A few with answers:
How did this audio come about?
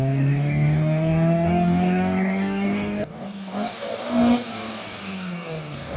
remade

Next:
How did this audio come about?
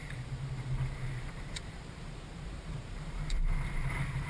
remade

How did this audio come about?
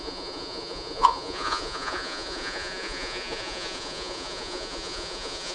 remade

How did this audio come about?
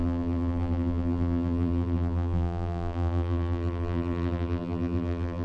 remade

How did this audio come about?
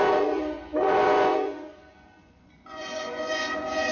remade